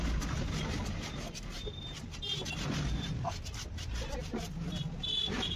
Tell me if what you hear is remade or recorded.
recorded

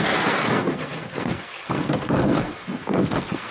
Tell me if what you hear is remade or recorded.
remade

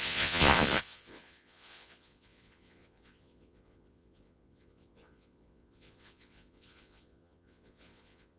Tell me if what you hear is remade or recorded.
remade